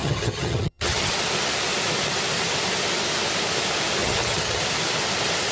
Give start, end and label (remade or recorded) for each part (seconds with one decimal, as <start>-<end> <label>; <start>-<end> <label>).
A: 0.0-1.1 remade; 1.1-4.0 recorded; 4.0-4.6 remade; 4.6-5.5 recorded